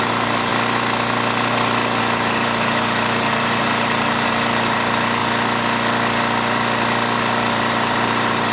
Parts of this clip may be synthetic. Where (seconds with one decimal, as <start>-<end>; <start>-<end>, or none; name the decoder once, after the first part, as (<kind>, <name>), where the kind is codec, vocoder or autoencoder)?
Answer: 0.0-0.5 (vocoder, BigVGAN v2); 2.0-5.2; 7.5-8.5